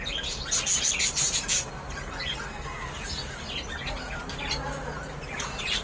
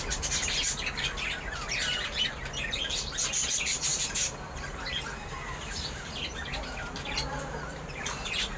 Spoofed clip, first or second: second